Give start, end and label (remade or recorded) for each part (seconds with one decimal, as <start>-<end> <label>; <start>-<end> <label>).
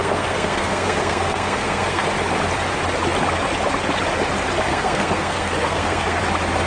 0.0-2.0 remade; 2.0-4.7 recorded; 4.7-6.2 remade; 6.2-6.7 recorded